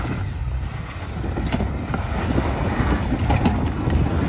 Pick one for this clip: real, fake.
real